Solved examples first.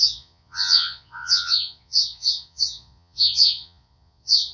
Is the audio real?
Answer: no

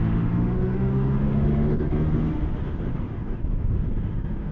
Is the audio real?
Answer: no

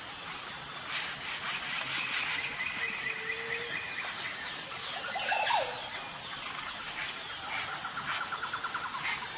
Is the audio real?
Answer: yes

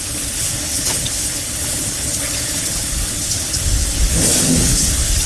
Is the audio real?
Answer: no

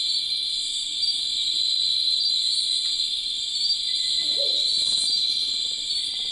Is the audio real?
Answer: yes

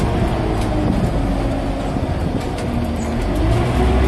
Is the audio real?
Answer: yes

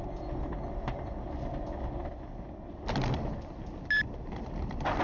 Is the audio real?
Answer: yes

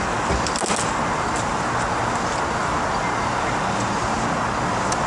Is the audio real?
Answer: yes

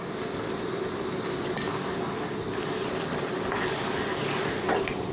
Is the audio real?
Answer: yes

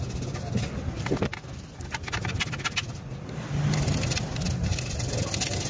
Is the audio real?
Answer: yes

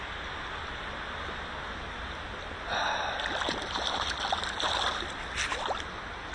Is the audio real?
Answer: yes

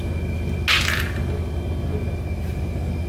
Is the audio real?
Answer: yes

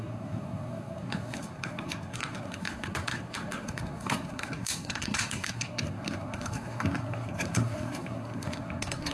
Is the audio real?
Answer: no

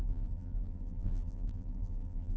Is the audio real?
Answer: no